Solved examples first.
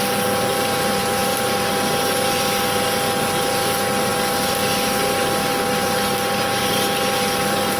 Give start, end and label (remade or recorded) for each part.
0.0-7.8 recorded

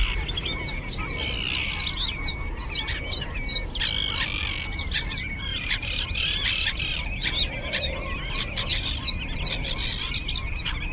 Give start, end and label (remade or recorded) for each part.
0.0-5.5 recorded; 5.5-6.8 remade; 6.8-10.9 recorded